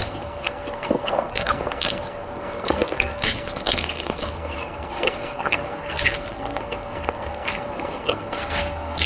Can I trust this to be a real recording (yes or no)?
no